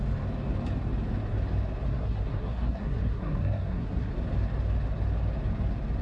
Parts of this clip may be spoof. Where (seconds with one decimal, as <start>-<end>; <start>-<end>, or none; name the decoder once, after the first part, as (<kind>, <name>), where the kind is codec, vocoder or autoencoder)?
1.9-4.1 (codec, SNAC)